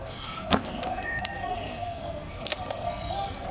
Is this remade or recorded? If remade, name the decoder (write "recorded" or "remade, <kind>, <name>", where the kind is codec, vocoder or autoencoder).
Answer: remade, codec, SNAC